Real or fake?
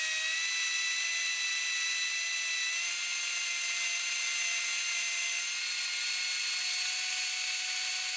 real